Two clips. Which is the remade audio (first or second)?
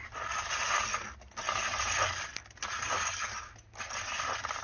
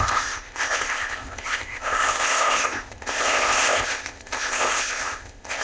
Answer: second